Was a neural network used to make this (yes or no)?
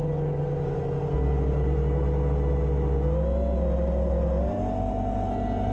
no